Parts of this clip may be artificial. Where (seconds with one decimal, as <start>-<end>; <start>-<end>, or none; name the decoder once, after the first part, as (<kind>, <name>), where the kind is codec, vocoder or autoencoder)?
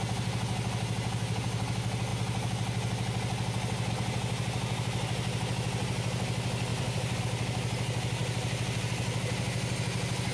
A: 6.7-7.2 (vocoder, BigVGAN v2)